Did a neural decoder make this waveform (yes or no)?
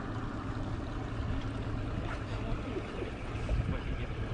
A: no